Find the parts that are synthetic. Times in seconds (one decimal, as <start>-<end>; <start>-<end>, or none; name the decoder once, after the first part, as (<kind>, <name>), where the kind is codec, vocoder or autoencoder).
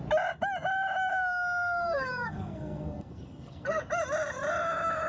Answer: 1.1-3.8 (codec, SNAC)